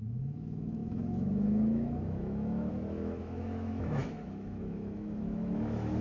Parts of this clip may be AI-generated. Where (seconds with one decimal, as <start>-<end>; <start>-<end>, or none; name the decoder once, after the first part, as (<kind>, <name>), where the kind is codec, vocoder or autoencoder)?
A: 0.0-6.0 (autoencoder, DAC-VAE)